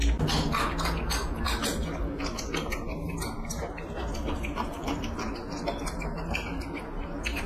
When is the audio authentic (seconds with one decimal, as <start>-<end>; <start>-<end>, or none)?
0.0-2.7